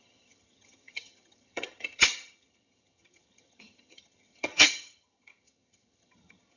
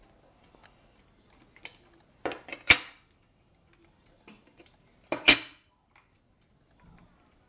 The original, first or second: second